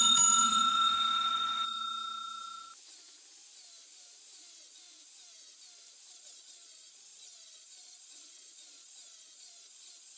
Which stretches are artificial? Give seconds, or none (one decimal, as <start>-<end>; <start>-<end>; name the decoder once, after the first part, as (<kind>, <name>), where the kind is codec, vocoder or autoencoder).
0.0-1.8 (vocoder, Vocos); 6.1-10.2